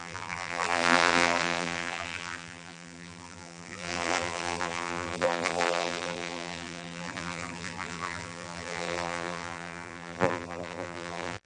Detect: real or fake fake